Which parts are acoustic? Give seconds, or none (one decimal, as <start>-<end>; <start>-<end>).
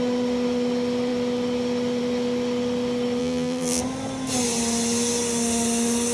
0.0-3.2; 3.8-6.1